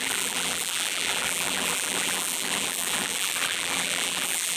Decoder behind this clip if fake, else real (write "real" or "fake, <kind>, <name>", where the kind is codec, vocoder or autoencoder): fake, vocoder, BigVGAN v2